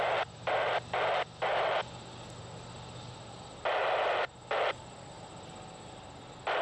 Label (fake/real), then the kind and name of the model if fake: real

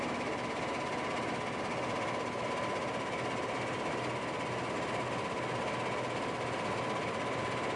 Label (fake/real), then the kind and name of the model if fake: real